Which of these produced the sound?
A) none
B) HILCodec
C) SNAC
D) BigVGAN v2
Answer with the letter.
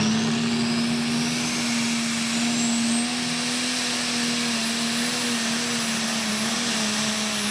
A